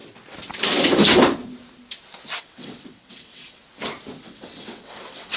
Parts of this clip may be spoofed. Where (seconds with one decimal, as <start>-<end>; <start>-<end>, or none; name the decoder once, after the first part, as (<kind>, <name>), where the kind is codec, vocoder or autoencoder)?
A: 2.4-3.6 (vocoder, WaveNeXt); 4.2-5.4